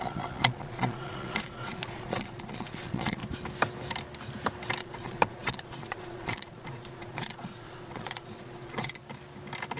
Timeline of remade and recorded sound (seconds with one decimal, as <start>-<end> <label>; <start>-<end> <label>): 0.0-3.2 remade; 3.2-4.8 recorded; 4.8-9.0 remade; 9.0-9.8 recorded